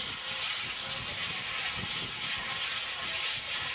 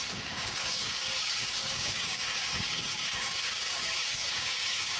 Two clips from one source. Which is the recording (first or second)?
first